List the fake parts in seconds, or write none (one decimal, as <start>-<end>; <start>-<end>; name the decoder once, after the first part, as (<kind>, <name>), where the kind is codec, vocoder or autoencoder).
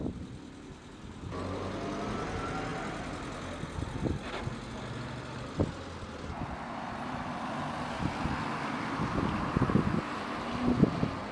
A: none